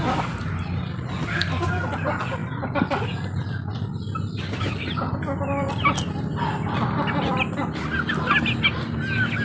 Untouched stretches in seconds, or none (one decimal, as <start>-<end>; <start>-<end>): 0.0-9.4